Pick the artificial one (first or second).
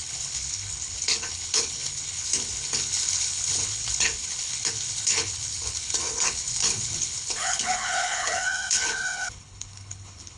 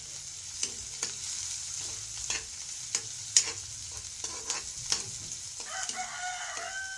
first